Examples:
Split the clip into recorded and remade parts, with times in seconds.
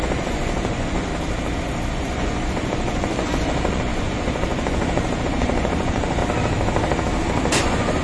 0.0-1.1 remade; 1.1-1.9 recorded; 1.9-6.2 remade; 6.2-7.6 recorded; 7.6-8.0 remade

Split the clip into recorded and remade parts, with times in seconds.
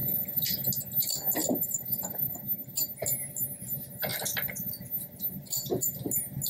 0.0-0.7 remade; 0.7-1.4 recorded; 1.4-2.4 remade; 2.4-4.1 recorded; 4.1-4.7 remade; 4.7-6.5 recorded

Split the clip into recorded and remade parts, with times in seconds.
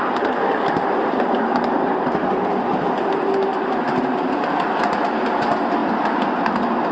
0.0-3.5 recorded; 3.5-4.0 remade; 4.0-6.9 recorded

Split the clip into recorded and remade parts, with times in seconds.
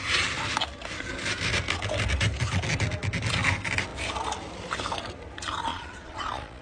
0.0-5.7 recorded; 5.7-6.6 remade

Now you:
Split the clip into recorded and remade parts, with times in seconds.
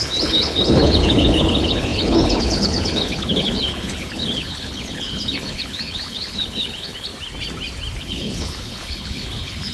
0.0-7.1 remade; 7.1-8.0 recorded; 8.0-9.7 remade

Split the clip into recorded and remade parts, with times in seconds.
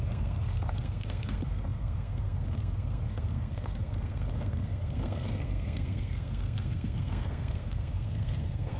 0.0-8.8 remade